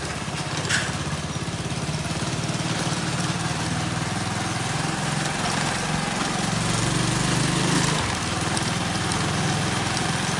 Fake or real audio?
real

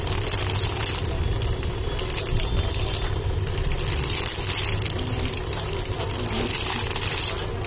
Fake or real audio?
real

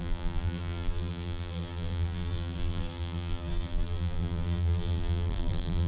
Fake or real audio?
fake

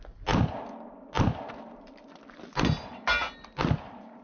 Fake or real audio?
real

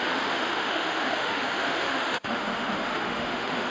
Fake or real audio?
fake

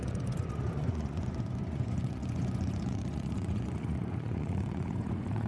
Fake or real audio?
fake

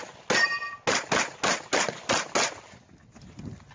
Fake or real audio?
real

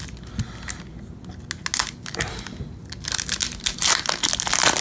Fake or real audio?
real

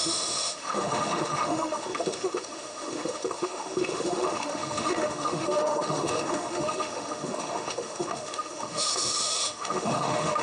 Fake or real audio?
fake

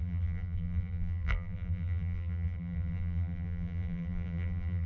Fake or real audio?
fake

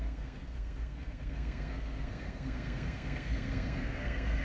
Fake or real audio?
fake